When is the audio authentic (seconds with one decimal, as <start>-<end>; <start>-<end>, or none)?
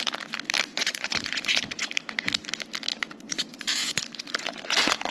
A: 0.0-0.7; 1.9-2.9